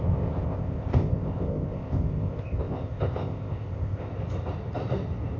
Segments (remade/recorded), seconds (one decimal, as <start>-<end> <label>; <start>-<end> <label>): 0.0-4.1 remade; 4.1-5.4 recorded

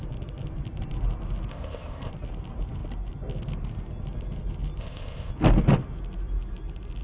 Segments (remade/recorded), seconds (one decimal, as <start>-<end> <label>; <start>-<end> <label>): 0.0-1.5 recorded; 1.5-2.1 remade; 2.1-4.8 recorded; 4.8-5.3 remade; 5.3-7.0 recorded

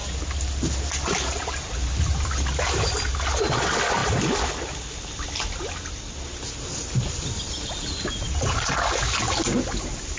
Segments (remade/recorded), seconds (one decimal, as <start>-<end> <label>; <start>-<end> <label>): 0.0-10.2 recorded